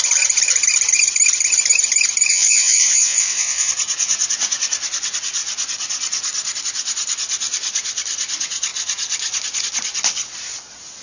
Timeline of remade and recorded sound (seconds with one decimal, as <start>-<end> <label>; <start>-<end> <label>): 0.0-2.3 recorded; 2.3-3.7 remade; 3.7-11.0 recorded